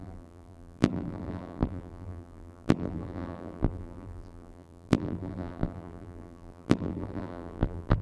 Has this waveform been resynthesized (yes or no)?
yes